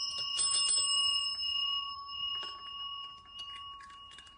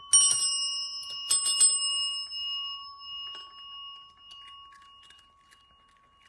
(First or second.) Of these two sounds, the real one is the second